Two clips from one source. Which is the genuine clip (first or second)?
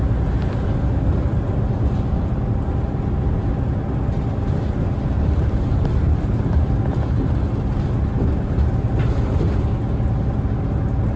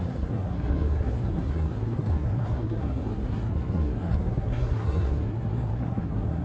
first